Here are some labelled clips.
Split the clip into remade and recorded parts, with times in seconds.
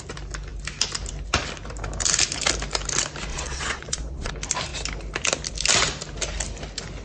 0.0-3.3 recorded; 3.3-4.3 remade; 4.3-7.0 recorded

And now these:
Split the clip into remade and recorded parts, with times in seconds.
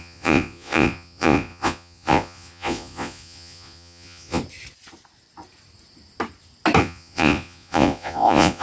0.0-4.4 remade; 4.4-6.8 recorded; 6.8-8.6 remade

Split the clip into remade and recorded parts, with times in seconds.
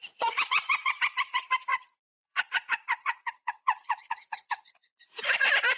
0.0-0.6 remade; 0.6-1.7 recorded; 1.7-5.2 remade; 5.2-5.8 recorded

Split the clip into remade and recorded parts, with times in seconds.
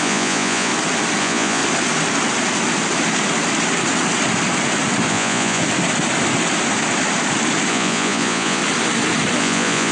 0.0-0.7 remade; 0.7-1.2 recorded; 1.2-1.6 remade; 1.6-5.1 recorded; 5.1-5.6 remade; 5.6-7.7 recorded; 7.7-8.6 remade; 8.6-9.4 recorded; 9.4-9.9 remade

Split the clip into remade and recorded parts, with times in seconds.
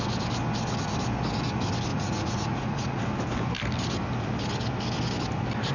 0.0-1.9 recorded; 1.9-3.0 remade; 3.0-5.7 recorded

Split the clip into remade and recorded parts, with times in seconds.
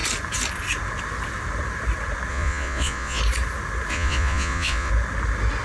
0.0-2.3 recorded; 2.3-3.2 remade; 3.2-3.9 recorded; 3.9-4.9 remade; 4.9-5.6 recorded